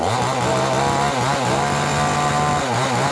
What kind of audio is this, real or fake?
real